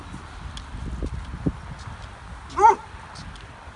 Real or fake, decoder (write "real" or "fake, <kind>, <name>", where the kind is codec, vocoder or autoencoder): real